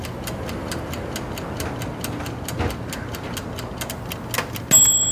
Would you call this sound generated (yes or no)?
no